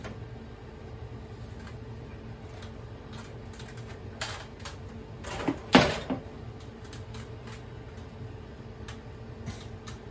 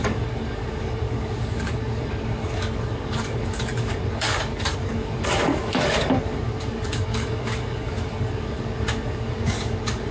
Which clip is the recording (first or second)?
first